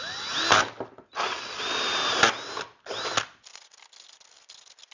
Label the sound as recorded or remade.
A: recorded